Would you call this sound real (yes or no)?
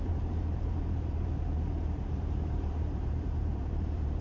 no